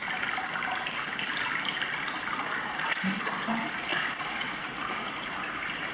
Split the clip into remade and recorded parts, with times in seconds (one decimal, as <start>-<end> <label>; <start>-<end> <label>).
0.0-5.9 recorded